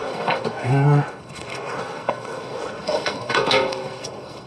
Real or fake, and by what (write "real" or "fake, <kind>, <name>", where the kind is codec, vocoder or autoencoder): fake, codec, SNAC